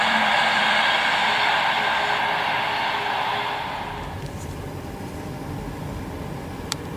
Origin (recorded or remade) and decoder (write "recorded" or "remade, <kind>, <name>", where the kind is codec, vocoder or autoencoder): remade, vocoder, BigVGAN v2